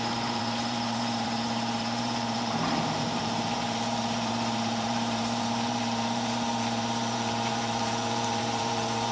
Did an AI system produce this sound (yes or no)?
yes